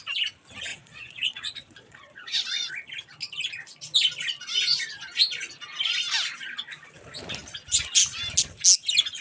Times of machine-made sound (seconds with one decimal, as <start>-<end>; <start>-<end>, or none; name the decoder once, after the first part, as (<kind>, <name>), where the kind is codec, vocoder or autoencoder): 0.7-2.7 (vocoder, Vocos)